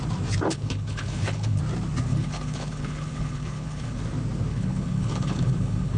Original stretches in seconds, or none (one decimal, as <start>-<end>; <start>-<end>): 0.0-0.5; 1.6-2.1; 4.0-4.5